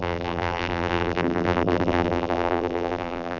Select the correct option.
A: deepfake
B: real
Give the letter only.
A